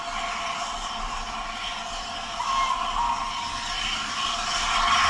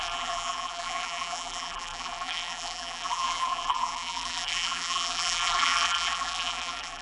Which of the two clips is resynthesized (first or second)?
second